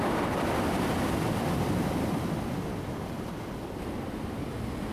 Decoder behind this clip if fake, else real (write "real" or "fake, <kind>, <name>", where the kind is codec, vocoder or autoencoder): real